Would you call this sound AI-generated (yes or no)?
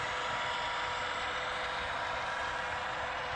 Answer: no